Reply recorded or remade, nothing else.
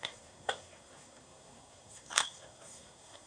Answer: remade